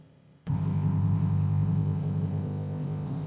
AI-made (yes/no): yes